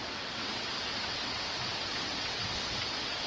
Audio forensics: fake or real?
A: fake